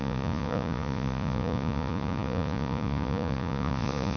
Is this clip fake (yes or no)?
yes